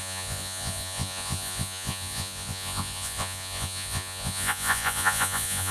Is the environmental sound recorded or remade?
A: remade